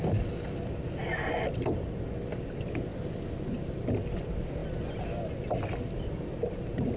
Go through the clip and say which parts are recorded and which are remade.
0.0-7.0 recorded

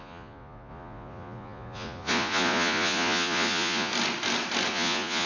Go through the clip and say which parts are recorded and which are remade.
0.0-3.9 remade; 3.9-4.7 recorded; 4.7-5.3 remade

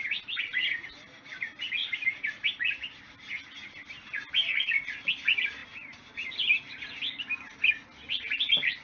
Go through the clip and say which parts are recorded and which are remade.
0.0-1.8 recorded; 1.8-3.0 remade; 3.0-8.8 recorded

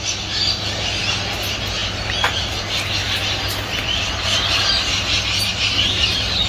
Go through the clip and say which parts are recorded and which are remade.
0.0-3.0 recorded; 3.0-5.6 remade; 5.6-6.5 recorded